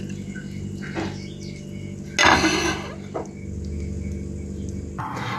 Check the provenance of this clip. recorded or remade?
recorded